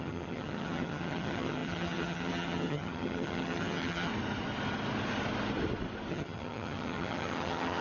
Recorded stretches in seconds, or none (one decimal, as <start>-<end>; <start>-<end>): 4.1-6.1